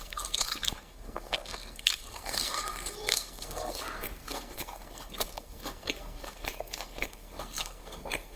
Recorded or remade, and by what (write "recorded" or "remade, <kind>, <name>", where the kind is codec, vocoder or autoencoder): remade, codec, SNAC